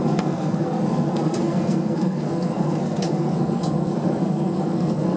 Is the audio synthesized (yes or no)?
yes